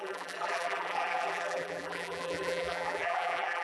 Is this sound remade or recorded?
remade